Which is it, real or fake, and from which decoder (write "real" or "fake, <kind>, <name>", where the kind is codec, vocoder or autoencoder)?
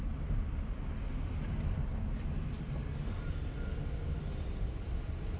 real